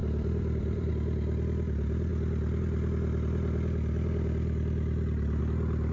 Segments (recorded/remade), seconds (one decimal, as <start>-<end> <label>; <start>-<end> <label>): 0.0-0.9 remade; 0.9-5.9 recorded

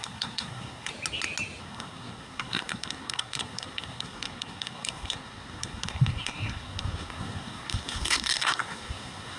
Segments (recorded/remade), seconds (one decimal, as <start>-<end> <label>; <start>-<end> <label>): 0.0-0.9 remade; 0.9-1.6 recorded; 1.6-9.4 remade

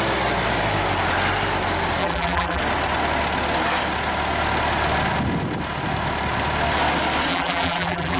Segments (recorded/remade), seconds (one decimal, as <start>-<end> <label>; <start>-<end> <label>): 0.0-2.0 recorded; 2.0-2.6 remade; 2.6-7.3 recorded; 7.3-8.2 remade

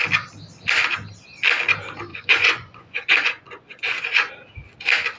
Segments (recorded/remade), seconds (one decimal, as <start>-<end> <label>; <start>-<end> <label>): 0.0-2.1 recorded; 2.1-4.3 remade; 4.3-5.2 recorded

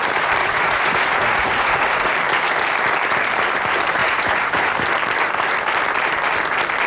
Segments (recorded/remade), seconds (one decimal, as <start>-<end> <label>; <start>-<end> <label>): 0.0-0.4 recorded; 0.4-2.1 remade; 2.1-4.0 recorded; 4.0-4.7 remade; 4.7-6.9 recorded

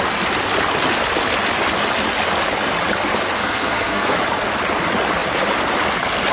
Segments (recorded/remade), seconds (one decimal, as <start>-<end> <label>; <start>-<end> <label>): 0.0-3.4 recorded; 3.4-4.2 remade; 4.2-6.3 recorded